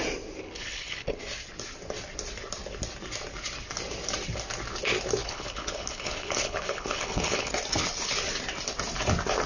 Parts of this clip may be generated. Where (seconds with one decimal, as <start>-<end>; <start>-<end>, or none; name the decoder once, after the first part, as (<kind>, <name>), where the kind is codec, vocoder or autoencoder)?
0.4-1.2 (codec, HILCodec); 5.2-7.5